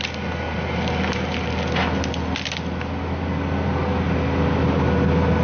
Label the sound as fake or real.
real